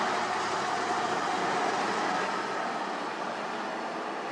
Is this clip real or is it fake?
real